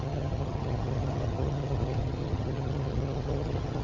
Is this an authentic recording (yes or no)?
no